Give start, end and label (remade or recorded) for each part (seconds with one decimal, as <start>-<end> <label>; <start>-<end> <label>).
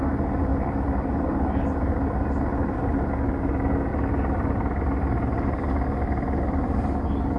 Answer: 0.0-0.5 recorded; 0.5-2.1 remade; 2.1-2.5 recorded; 2.5-3.1 remade; 3.1-3.9 recorded; 3.9-5.7 remade; 5.7-7.4 recorded